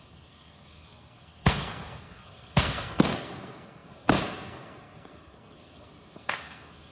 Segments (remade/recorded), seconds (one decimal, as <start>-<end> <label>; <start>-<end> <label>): 0.0-6.9 remade